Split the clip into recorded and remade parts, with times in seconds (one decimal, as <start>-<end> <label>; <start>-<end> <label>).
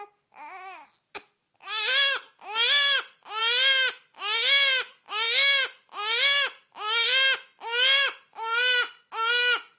0.0-9.8 recorded